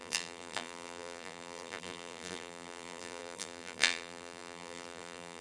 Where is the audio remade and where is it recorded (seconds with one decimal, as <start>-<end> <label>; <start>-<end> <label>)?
0.0-5.4 remade